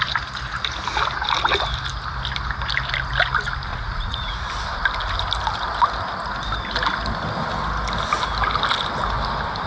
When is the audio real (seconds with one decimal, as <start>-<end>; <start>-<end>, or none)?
0.0-3.7; 4.5-9.7